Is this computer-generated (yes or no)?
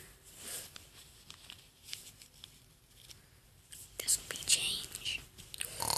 no